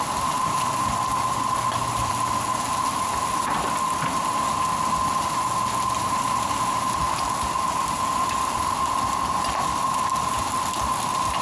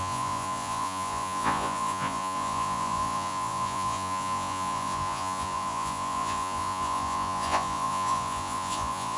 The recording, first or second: first